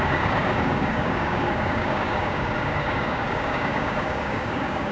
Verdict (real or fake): fake